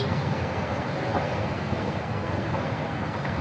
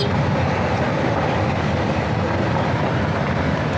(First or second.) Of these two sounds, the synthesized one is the first